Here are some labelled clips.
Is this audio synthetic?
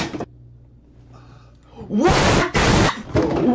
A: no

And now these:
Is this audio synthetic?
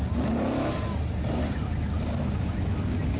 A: no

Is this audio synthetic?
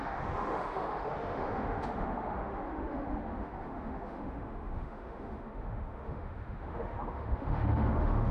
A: yes